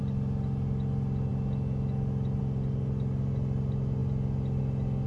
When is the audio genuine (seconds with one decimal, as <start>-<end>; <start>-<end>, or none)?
0.0-5.1